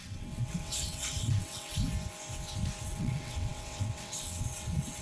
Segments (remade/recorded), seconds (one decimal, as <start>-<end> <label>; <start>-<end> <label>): 0.0-1.7 remade; 1.7-2.8 recorded; 2.8-5.0 remade